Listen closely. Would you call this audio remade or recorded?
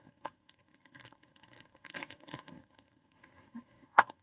remade